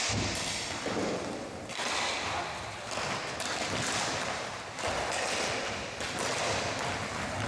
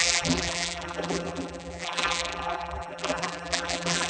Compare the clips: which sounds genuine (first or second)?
first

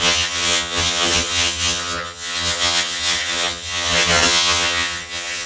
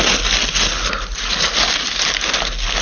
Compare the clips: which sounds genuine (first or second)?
second